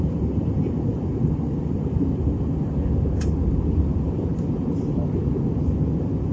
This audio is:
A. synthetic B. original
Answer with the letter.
B